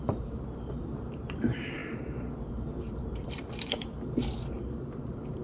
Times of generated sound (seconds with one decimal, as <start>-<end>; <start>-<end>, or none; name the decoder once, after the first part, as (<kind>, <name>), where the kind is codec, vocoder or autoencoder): 0.0-5.4 (vocoder, BigVGAN v2)